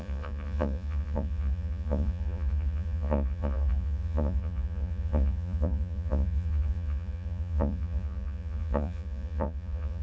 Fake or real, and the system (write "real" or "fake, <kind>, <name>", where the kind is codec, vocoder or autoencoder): fake, vocoder, Vocos